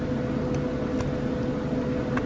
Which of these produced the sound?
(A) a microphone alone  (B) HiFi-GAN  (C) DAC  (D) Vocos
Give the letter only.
A